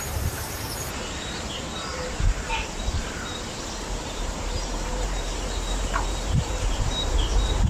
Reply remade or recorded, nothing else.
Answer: remade